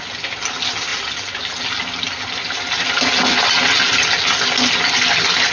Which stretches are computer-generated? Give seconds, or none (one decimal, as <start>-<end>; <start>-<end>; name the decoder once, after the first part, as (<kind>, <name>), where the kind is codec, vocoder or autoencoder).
none